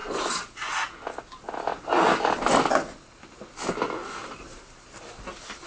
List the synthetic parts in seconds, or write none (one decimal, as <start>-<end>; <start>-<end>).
4.2-4.8